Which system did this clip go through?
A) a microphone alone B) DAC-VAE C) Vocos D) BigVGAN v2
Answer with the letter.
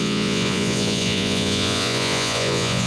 C